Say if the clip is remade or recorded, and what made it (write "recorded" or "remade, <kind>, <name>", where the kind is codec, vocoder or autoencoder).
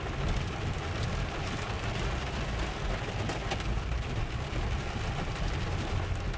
recorded